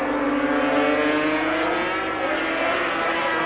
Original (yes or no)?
yes